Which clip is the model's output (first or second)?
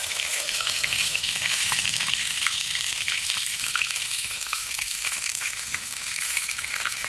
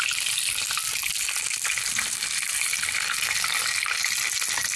first